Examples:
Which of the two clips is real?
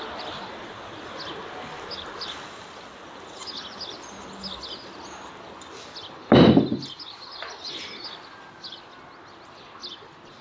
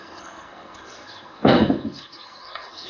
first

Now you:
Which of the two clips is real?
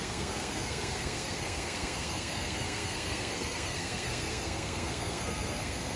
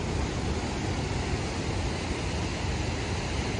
second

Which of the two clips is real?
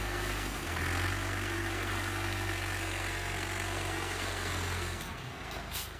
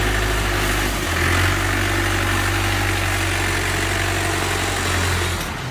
second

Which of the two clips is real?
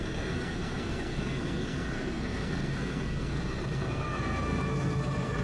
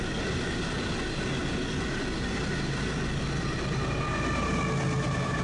second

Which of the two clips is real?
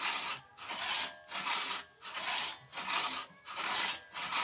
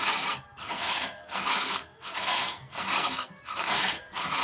first